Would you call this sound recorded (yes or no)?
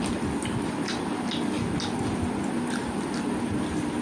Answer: yes